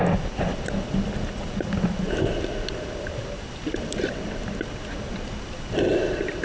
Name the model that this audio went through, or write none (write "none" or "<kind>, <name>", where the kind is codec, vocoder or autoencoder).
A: none